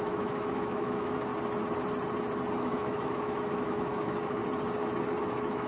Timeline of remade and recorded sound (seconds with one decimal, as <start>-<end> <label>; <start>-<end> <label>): 0.0-1.3 remade; 1.3-2.6 recorded; 2.6-4.4 remade; 4.4-5.2 recorded; 5.2-5.7 remade